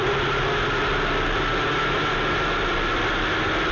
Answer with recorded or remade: recorded